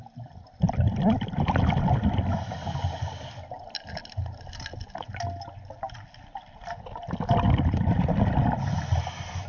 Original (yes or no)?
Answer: yes